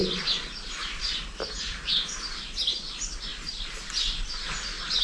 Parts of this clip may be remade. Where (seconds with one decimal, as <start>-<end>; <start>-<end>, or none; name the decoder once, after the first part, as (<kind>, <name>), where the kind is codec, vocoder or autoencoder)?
none